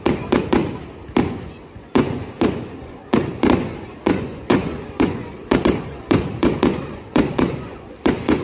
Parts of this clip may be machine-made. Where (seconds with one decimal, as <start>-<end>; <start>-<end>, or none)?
0.0-0.6; 1.2-8.4